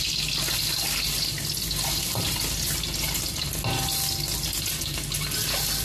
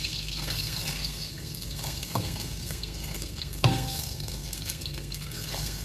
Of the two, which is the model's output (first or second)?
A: second